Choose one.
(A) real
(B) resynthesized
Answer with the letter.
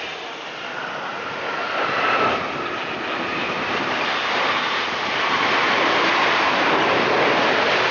A